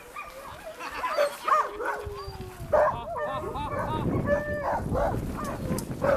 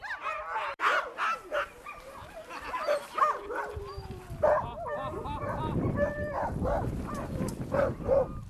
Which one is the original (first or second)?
first